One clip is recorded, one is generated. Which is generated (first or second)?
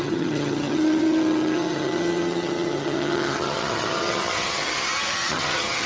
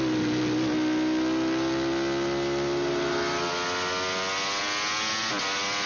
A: first